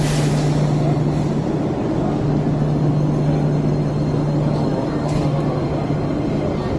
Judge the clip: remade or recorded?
recorded